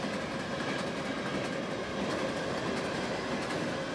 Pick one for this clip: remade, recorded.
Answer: recorded